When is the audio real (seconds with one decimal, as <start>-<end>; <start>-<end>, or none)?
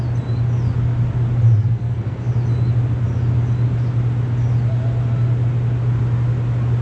0.0-1.6; 2.3-6.8